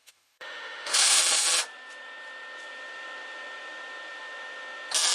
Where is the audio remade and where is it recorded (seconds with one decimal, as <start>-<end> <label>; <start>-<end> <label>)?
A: 0.0-1.2 remade; 1.2-5.1 recorded